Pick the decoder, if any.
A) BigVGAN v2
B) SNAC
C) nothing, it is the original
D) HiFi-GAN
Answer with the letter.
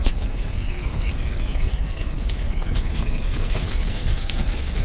B